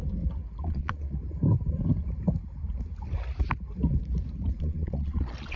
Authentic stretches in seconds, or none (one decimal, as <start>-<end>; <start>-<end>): 0.0-0.6; 1.2-4.6